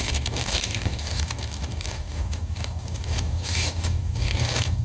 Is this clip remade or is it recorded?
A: remade